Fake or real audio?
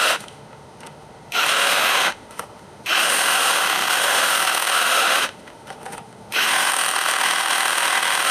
fake